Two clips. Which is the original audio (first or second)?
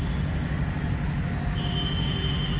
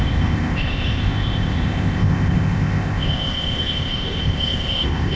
first